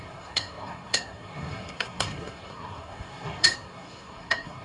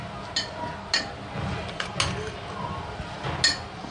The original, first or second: second